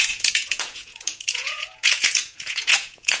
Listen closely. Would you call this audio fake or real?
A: fake